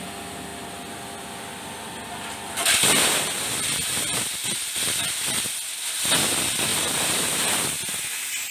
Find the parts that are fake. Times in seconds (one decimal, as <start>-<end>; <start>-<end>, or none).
6.7-7.6